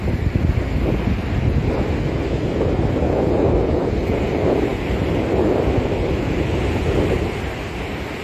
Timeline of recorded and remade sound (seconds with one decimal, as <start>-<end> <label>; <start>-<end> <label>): 0.0-8.2 recorded